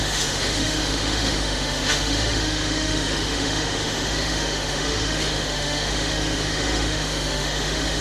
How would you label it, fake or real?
fake